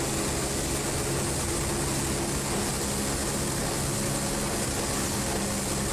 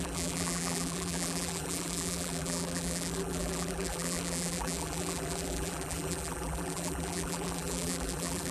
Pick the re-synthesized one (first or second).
second